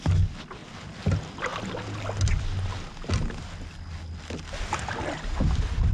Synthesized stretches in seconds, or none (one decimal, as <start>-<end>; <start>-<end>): none